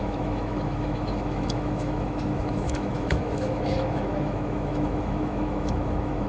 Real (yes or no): no